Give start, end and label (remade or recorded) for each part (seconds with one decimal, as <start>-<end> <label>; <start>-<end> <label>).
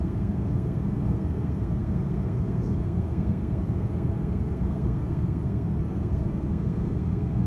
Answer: 0.0-7.5 remade